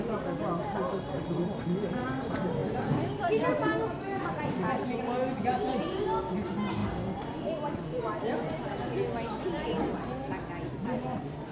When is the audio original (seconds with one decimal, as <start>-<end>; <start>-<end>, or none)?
0.0-11.5